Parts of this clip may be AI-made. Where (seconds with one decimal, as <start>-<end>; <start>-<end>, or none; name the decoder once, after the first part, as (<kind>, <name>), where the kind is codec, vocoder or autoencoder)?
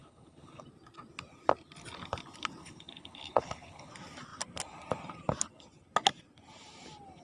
0.0-0.6 (codec, HILCodec); 2.6-3.9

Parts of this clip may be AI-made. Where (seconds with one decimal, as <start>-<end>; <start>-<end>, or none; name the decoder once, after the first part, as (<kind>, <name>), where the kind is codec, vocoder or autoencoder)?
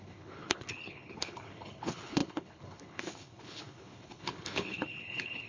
0.0-5.5 (codec, HILCodec)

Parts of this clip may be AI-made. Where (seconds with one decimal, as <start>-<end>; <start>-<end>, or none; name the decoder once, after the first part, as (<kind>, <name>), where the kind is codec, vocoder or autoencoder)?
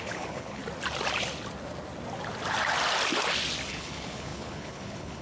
0.0-0.6 (codec, HILCodec); 3.7-5.2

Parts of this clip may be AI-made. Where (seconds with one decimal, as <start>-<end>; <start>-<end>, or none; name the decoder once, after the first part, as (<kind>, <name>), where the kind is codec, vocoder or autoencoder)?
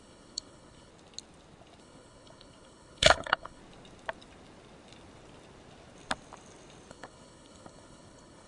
0.0-0.9 (codec, HILCodec); 1.8-3.6; 6.9-8.5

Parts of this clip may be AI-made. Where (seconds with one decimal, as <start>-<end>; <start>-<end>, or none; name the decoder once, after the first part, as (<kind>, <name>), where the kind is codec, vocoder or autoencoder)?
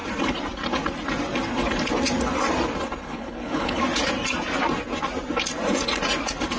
3.0-3.8 (codec, HILCodec)